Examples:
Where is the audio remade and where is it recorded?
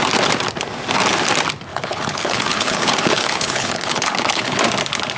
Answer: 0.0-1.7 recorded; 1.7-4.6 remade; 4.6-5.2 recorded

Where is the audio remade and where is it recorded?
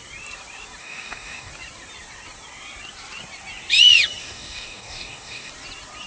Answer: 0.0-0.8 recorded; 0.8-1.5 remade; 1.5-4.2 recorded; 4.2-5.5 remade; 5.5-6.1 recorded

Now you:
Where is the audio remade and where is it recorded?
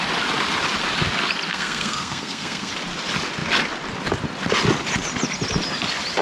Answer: 0.0-1.5 recorded; 1.5-2.7 remade; 2.7-6.2 recorded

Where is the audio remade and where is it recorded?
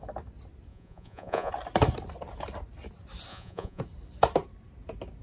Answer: 0.0-0.7 recorded; 0.7-1.5 remade; 1.5-3.3 recorded; 3.3-3.8 remade; 3.8-5.2 recorded